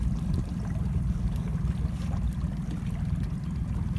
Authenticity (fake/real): real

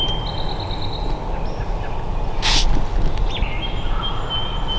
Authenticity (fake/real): real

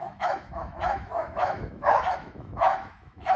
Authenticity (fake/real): fake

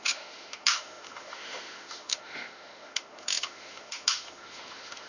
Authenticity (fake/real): fake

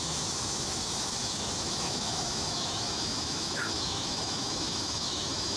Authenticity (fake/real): fake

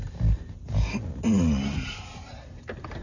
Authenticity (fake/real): real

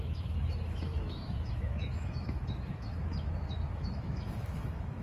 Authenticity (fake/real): fake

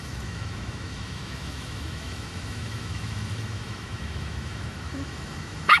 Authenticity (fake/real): fake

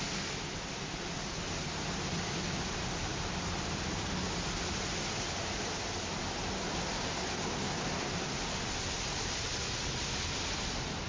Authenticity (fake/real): real